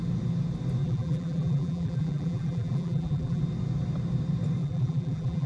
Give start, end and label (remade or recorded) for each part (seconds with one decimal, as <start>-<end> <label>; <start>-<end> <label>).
0.0-0.8 recorded; 0.8-3.4 remade; 3.4-4.6 recorded; 4.6-5.5 remade